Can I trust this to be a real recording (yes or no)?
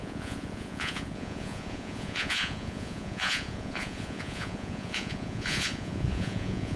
no